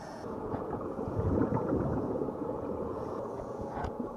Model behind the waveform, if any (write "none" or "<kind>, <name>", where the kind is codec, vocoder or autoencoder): vocoder, Vocos